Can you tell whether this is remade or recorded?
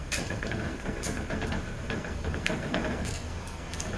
remade